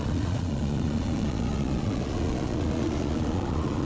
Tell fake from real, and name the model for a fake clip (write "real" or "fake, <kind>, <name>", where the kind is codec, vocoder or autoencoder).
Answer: fake, vocoder, Vocos